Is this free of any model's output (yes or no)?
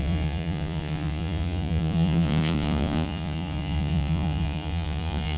no